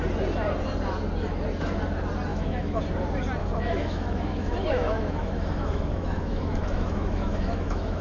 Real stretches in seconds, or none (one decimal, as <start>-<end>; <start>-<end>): 0.0-2.3; 2.8-3.4